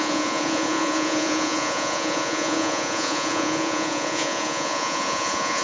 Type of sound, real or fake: fake